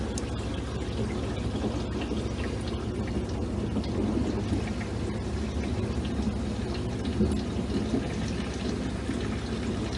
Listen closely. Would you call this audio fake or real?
real